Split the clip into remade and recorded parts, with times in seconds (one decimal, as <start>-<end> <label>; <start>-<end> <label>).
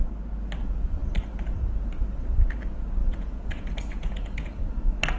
0.0-3.0 recorded; 3.0-4.6 remade; 4.6-5.2 recorded